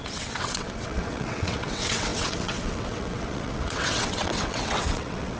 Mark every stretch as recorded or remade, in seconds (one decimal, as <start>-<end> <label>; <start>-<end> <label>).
0.0-5.4 remade